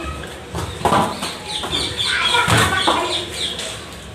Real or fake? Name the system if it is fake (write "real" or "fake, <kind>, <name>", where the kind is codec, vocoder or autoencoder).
real